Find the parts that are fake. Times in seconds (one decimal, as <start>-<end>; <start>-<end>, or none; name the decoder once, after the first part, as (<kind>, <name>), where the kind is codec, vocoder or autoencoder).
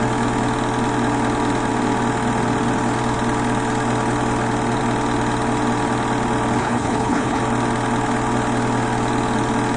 6.6-7.4 (codec, HILCodec)